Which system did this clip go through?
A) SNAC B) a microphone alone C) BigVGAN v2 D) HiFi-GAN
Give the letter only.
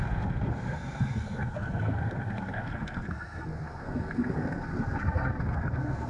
A